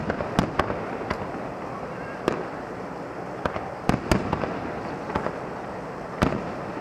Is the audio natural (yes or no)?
yes